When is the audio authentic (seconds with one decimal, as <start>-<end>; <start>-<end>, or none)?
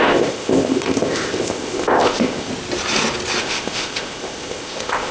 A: 2.5-3.4